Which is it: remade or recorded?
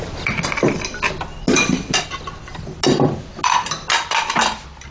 recorded